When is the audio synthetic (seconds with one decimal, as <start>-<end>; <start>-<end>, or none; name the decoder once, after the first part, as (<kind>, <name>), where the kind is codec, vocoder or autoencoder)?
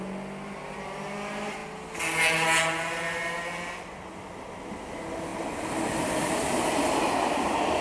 none